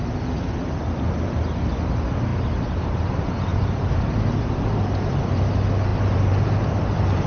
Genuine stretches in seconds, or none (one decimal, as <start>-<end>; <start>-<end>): 0.0-2.3; 3.1-3.5; 5.2-5.9

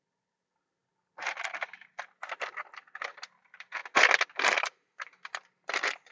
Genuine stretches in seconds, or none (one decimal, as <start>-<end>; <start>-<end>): 3.8-4.3